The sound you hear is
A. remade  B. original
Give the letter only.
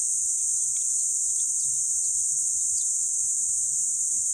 B